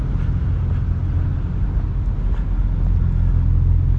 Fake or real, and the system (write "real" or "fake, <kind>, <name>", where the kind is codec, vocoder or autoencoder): real